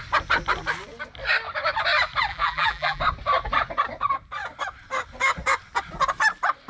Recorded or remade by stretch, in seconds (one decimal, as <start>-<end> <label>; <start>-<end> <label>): 0.0-2.3 recorded; 2.3-3.0 remade; 3.0-6.7 recorded